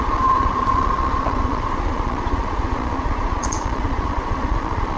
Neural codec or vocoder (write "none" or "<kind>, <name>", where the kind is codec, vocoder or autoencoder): vocoder, Vocos